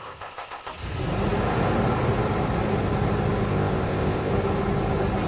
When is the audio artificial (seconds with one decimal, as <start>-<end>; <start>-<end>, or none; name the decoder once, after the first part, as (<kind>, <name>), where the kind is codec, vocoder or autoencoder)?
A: 0.0-0.7 (codec, ZipCodec); 3.5-4.3

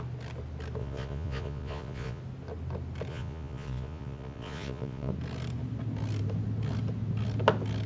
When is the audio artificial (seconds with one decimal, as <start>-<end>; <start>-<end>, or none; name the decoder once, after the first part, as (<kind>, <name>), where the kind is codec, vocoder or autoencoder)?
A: 0.8-2.2 (vocoder, Vocos); 3.1-5.1

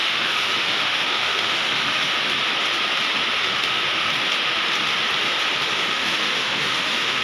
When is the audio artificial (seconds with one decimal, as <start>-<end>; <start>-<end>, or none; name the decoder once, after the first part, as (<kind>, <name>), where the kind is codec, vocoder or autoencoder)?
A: 0.0-2.1 (autoencoder, DAC-VAE); 3.4-3.8; 5.7-7.2

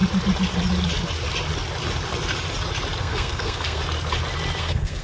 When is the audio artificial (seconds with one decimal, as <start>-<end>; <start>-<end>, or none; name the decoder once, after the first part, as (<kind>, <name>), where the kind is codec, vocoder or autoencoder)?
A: 3.0-3.8 (codec, SNAC); 4.6-5.0

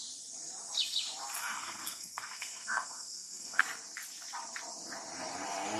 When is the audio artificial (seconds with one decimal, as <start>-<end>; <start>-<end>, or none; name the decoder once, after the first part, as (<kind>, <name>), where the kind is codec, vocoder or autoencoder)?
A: 1.4-3.6 (codec, SNAC)

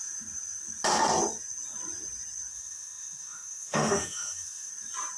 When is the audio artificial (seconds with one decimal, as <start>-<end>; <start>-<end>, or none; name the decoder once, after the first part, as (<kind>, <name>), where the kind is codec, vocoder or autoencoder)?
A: 2.5-4.7 (autoencoder, DAC-VAE)

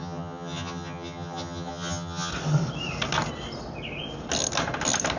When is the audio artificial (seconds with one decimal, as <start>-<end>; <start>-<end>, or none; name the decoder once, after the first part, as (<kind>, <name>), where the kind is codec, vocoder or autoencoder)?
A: 0.0-2.3 (vocoder, HiFi-GAN)